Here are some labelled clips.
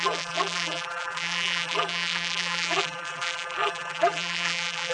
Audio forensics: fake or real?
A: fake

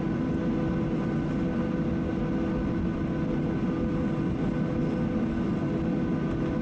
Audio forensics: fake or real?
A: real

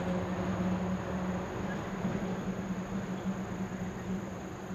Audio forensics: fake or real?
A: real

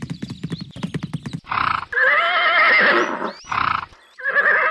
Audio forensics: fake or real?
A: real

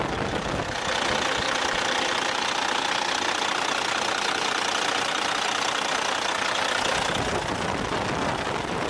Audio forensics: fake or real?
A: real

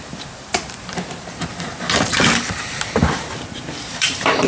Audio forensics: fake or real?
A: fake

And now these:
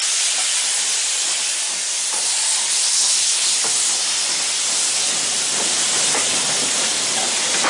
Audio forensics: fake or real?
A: real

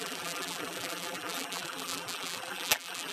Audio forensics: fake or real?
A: fake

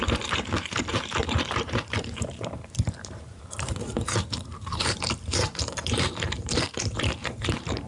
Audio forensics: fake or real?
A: fake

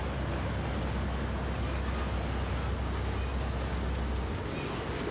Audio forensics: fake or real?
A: real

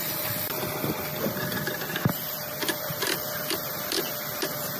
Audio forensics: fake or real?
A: fake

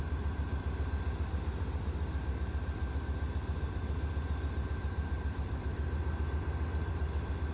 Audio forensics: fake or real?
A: fake